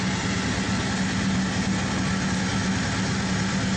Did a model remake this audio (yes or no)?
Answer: no